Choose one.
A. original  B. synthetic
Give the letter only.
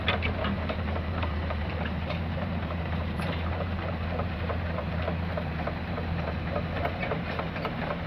B